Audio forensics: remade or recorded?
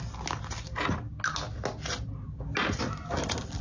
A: recorded